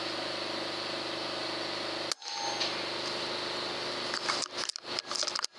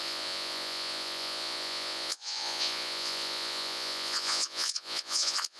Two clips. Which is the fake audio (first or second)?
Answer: second